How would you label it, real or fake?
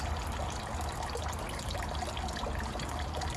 real